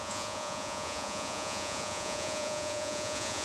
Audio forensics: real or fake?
fake